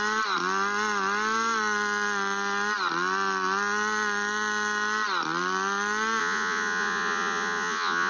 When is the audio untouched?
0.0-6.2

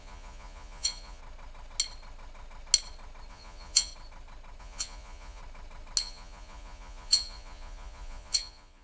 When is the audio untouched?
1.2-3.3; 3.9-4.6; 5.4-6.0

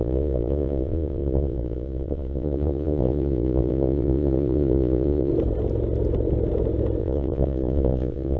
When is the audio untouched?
5.3-7.0

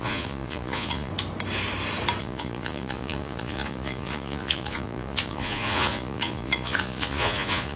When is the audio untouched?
1.1-2.2